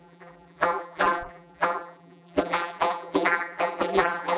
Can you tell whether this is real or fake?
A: fake